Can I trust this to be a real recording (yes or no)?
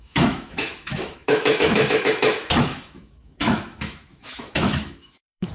no